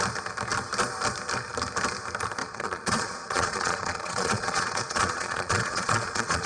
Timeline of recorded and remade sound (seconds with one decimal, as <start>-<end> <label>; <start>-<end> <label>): 0.0-2.4 recorded; 2.4-6.5 remade